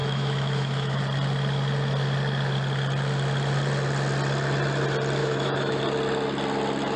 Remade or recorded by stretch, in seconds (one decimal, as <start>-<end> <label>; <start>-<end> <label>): 0.0-1.0 remade; 1.0-5.2 recorded; 5.2-5.8 remade; 5.8-7.0 recorded